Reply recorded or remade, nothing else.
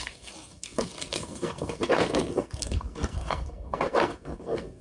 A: remade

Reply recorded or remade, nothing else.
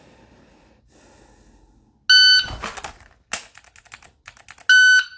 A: recorded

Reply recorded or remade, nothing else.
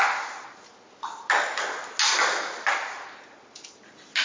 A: recorded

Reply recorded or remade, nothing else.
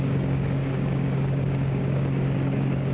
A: remade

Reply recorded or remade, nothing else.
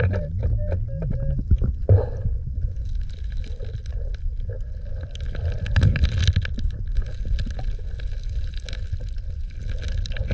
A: recorded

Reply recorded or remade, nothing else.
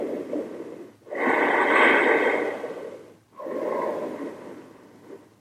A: recorded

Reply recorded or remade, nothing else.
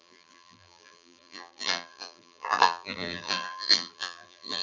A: remade